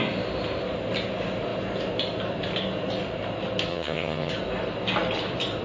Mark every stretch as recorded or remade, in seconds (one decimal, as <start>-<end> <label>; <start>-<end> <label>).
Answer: 0.0-3.7 recorded; 3.7-4.3 remade; 4.3-5.6 recorded